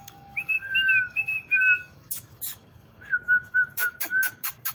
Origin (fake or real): fake